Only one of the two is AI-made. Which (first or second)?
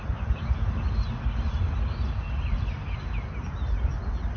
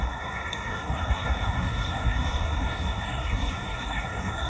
second